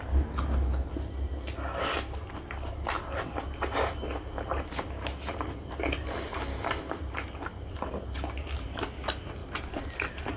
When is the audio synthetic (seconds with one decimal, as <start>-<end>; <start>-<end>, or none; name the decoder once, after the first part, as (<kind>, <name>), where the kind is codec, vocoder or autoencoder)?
9.4-9.9 (vocoder, BigVGAN v2)